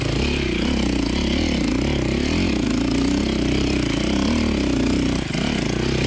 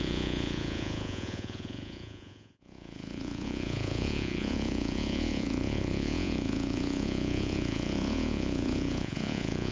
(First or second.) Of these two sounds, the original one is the first